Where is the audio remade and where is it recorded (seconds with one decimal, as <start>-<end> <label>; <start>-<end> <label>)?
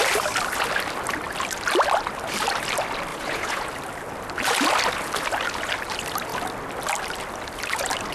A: 0.0-3.1 recorded; 3.1-3.7 remade; 3.7-8.1 recorded